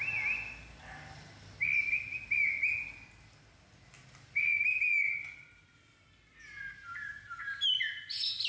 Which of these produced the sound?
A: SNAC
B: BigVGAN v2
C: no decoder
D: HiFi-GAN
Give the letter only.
C